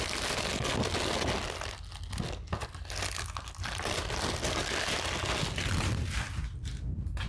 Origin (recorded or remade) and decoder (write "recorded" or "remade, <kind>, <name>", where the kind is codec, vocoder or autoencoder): recorded